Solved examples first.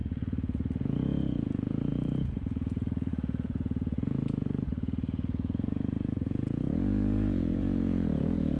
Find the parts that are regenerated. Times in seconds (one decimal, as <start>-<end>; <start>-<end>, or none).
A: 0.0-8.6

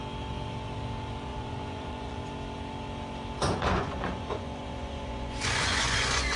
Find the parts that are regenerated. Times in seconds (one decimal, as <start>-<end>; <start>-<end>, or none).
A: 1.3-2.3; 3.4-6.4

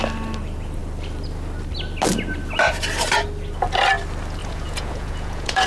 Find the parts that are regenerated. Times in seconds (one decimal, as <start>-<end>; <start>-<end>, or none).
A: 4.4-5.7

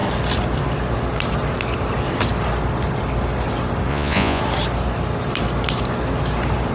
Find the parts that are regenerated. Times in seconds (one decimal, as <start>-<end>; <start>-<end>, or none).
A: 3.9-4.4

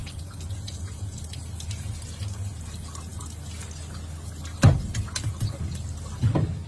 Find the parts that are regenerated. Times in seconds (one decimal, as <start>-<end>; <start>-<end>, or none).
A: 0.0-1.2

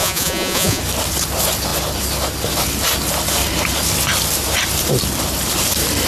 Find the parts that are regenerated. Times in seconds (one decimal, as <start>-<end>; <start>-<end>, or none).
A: 0.0-0.8